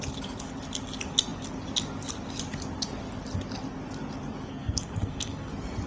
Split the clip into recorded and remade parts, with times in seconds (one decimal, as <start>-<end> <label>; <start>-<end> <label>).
0.0-4.5 recorded; 4.5-5.5 remade; 5.5-5.9 recorded